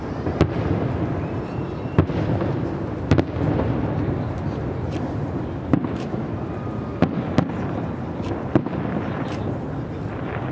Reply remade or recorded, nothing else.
recorded